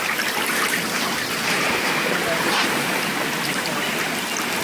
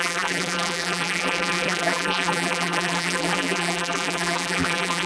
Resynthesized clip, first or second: second